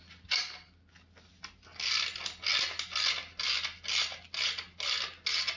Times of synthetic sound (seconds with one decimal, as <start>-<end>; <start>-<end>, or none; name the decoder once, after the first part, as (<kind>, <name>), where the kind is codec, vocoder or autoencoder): none